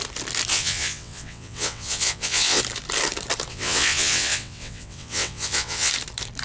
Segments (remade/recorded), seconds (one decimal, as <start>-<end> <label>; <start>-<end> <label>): 0.0-0.5 recorded; 0.5-2.6 remade; 2.6-3.5 recorded; 3.5-5.9 remade; 5.9-6.4 recorded